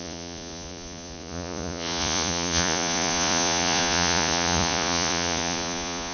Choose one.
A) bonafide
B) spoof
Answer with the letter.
B